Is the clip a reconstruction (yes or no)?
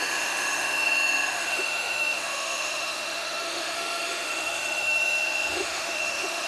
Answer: yes